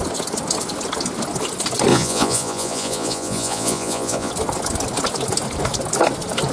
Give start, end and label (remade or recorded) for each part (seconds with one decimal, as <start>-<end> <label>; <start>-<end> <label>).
0.0-1.9 recorded; 1.9-4.3 remade; 4.3-6.5 recorded